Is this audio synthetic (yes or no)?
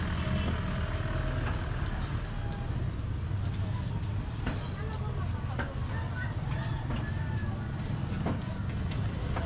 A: no